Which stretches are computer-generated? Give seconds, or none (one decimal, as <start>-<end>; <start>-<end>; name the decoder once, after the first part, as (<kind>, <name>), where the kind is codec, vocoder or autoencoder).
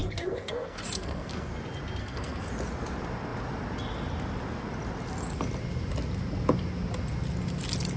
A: 0.0-1.5 (codec, SNAC); 2.0-2.5